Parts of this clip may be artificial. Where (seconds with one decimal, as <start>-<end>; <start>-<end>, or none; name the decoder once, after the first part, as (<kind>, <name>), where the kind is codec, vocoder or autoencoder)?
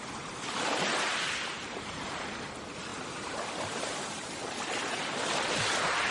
none